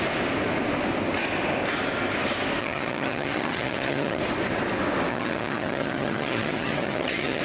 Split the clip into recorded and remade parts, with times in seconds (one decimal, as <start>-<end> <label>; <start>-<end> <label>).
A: 0.0-2.6 recorded; 2.6-4.2 remade; 4.2-5.1 recorded; 5.1-7.4 remade